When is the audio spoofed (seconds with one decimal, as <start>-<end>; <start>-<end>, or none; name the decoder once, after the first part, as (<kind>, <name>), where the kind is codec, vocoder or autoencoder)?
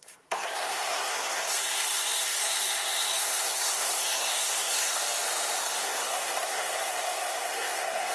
0.0-5.0 (codec, SNAC); 5.6-8.1